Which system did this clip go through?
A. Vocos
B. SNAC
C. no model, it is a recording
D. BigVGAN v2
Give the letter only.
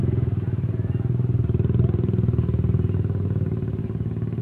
C